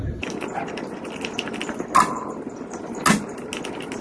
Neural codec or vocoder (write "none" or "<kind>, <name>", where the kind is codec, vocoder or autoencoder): none